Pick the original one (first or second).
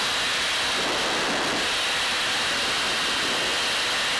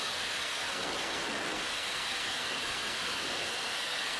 first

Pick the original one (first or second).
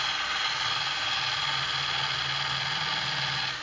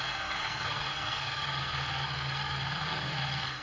first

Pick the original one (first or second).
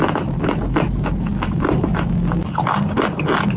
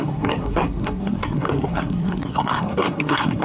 first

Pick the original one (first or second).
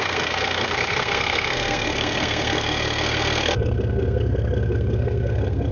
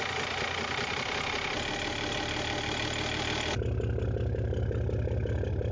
second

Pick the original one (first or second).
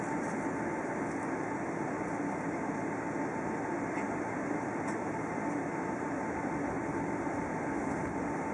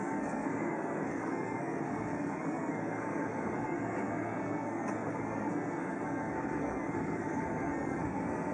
first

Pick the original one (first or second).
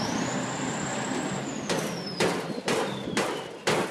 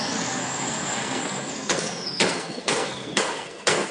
first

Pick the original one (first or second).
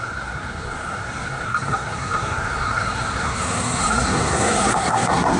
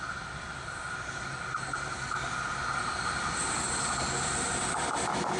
second